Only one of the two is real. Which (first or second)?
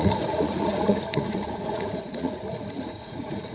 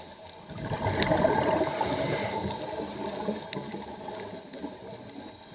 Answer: second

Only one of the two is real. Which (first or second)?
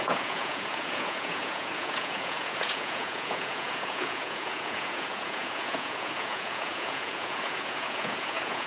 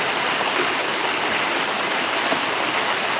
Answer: second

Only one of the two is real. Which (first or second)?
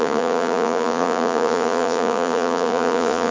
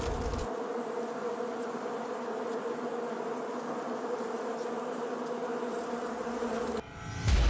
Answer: second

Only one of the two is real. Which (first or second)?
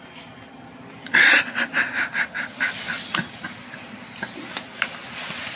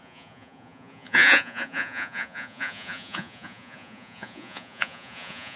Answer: first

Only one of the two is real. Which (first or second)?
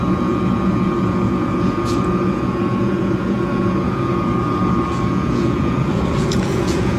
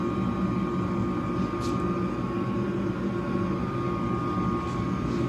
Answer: second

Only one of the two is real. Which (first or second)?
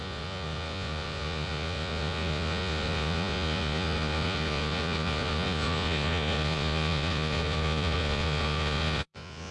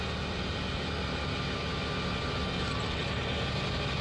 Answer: second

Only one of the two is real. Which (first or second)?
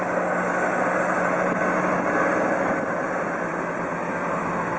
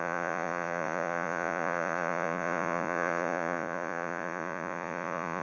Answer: first